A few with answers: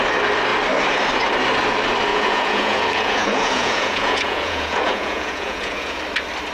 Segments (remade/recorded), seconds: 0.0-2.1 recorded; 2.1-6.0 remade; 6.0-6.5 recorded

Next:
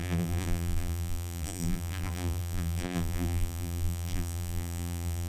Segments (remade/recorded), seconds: 0.0-5.3 remade

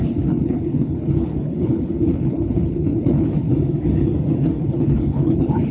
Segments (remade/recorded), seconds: 0.0-3.5 remade; 3.5-4.6 recorded; 4.6-5.7 remade

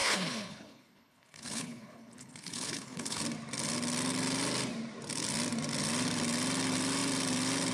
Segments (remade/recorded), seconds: 0.0-3.2 remade; 3.2-7.7 recorded

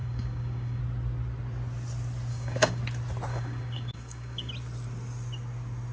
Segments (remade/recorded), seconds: 0.0-0.8 remade; 0.8-2.3 recorded; 2.3-2.8 remade; 2.8-3.3 recorded; 3.3-4.5 remade; 4.5-5.9 recorded

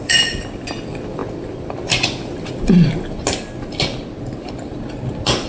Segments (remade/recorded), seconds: 0.0-5.5 recorded

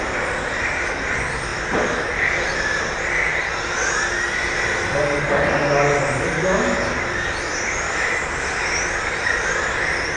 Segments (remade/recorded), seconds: 0.0-10.2 recorded

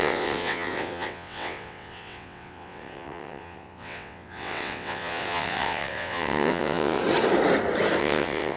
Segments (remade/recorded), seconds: 0.0-7.0 remade; 7.0-8.0 recorded; 8.0-8.6 remade